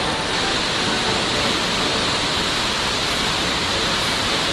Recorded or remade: remade